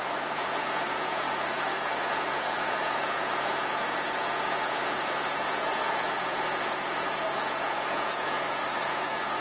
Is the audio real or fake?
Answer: fake